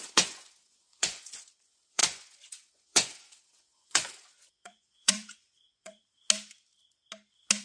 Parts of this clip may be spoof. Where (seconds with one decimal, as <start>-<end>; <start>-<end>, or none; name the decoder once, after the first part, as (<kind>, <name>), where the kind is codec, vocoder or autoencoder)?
0.0-6.0 (vocoder, Vocos)